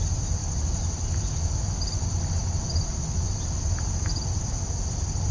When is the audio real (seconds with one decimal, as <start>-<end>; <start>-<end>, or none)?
0.0-0.4; 1.5-5.3